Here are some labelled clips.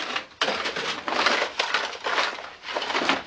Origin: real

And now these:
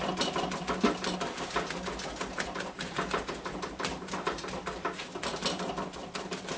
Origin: real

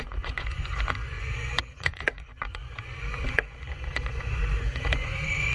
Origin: fake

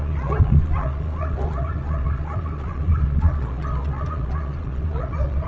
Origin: fake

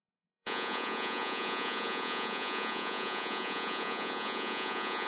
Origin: fake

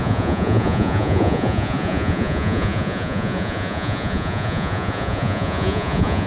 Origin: fake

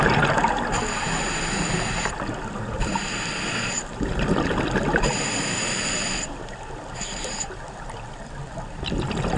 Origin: real